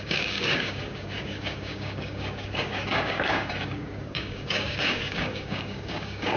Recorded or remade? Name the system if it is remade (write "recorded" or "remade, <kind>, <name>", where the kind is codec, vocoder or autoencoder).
remade, codec, DAC